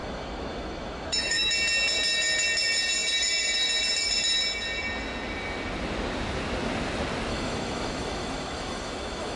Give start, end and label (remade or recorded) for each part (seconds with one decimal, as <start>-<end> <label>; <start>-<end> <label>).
0.0-1.5 remade; 1.5-7.3 recorded; 7.3-9.4 remade